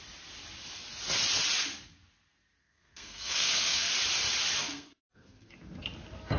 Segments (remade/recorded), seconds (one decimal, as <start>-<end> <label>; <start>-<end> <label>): 0.0-2.6 recorded; 2.6-3.9 remade; 3.9-4.6 recorded; 4.6-5.5 remade; 5.5-6.4 recorded